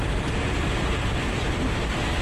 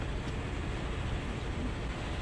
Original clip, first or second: second